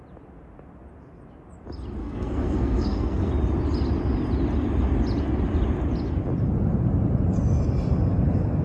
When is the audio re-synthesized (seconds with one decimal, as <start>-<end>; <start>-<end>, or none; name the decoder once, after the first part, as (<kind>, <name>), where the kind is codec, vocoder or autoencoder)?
2.0-3.3 (codec, SNAC)

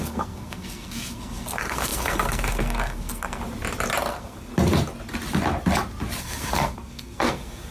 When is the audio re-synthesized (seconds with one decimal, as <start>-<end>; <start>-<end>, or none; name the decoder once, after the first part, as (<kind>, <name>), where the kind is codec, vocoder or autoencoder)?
0.0-3.4 (codec, SNAC); 4.1-4.5; 6.2-7.7